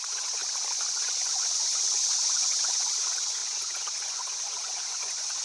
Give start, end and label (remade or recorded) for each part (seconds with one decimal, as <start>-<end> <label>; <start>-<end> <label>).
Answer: 0.0-0.4 remade; 0.4-0.9 recorded; 0.9-5.4 remade